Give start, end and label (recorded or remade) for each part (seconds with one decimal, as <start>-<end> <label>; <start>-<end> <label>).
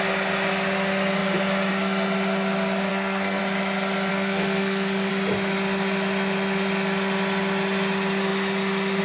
0.0-2.9 recorded; 2.9-3.4 remade; 3.4-4.1 recorded; 4.1-5.1 remade; 5.1-9.0 recorded